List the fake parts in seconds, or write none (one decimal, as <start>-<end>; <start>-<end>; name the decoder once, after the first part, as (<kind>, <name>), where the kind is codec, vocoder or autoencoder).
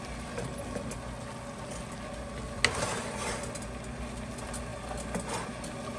none